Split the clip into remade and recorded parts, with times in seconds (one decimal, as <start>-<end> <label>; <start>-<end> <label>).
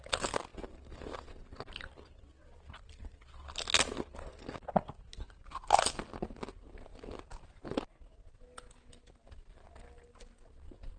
0.0-11.0 recorded